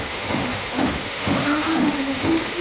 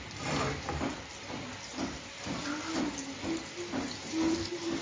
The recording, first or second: second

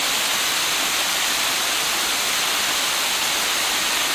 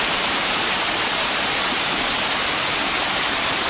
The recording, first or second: first